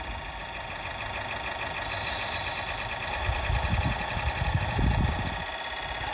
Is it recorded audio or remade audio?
recorded